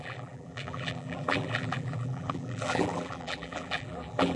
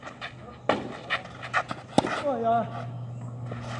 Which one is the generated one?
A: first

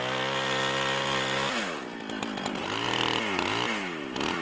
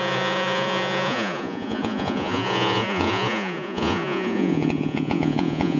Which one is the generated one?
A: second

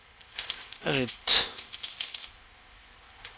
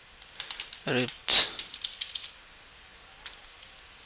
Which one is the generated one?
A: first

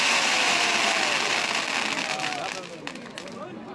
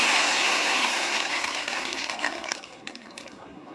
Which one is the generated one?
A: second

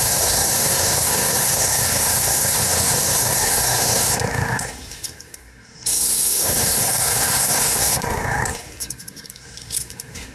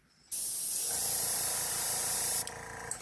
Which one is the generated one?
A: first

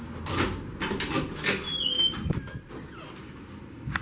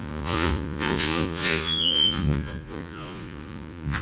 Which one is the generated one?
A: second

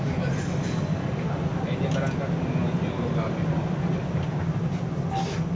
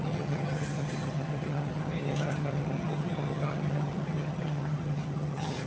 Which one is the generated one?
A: second